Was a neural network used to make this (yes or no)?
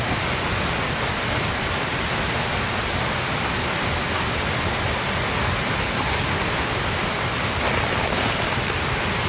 no